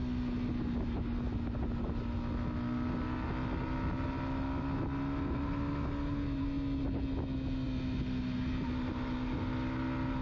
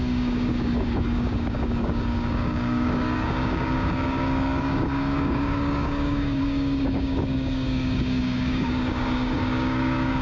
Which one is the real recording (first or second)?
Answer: first